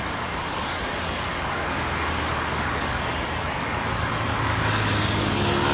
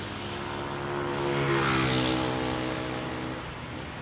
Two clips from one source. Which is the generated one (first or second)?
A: first